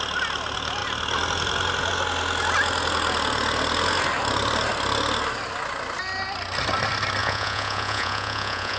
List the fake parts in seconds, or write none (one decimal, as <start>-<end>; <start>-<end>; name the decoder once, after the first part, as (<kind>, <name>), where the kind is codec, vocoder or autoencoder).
7.2-8.8 (vocoder, Vocos)